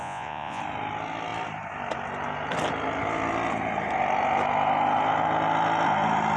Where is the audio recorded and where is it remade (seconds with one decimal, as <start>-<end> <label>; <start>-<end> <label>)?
0.0-0.6 remade; 0.6-6.4 recorded